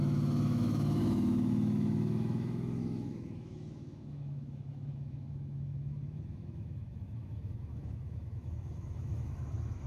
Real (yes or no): no